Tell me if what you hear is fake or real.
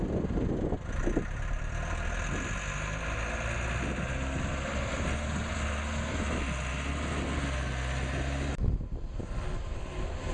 real